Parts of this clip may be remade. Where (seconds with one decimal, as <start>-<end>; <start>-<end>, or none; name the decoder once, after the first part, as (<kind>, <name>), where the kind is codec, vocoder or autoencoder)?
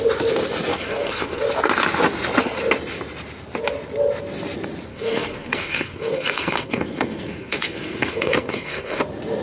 0.7-1.4 (codec, SNAC); 4.9-9.0